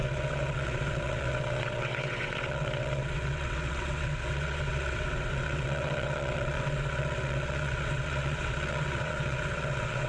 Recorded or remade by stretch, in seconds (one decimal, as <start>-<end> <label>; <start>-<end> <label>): 0.0-10.1 remade